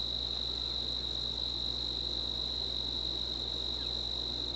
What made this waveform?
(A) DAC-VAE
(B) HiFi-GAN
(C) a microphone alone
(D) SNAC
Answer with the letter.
C